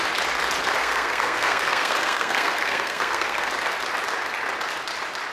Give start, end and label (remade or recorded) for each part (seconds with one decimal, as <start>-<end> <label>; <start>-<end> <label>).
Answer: 0.0-0.8 recorded; 0.8-3.5 remade; 3.5-5.3 recorded